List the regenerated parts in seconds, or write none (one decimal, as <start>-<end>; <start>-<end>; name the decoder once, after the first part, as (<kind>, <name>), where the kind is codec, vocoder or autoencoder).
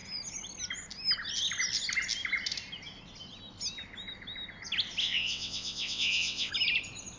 5.0-6.5 (vocoder, WaveNeXt)